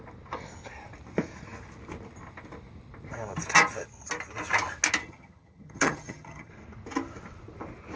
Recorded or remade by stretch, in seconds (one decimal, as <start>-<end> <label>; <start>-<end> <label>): 0.0-5.0 recorded; 5.0-6.5 remade; 6.5-8.0 recorded